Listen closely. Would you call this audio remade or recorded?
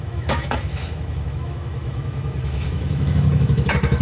remade